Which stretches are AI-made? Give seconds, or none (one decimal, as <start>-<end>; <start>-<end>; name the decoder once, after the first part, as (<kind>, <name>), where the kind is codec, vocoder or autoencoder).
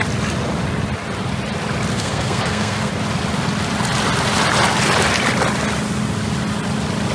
1.9-2.9 (codec, SNAC)